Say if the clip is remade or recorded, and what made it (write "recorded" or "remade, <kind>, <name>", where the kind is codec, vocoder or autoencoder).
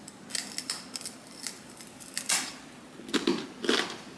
recorded